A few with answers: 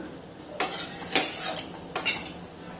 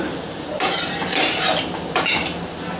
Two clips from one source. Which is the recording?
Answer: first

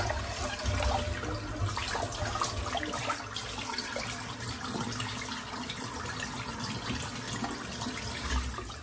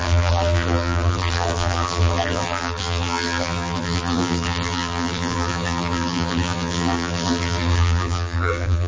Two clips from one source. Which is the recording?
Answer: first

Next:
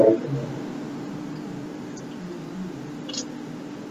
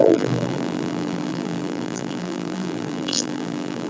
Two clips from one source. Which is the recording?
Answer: first